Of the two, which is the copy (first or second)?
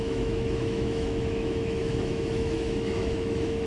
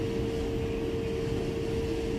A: first